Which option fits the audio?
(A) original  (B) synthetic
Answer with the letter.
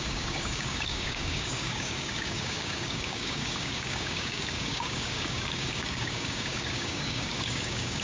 B